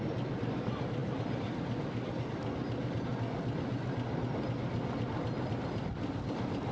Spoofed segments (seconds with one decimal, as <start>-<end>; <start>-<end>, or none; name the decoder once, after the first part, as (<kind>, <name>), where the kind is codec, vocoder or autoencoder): none